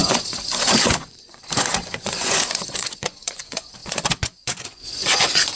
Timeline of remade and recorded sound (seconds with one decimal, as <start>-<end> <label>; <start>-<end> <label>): 0.0-5.6 remade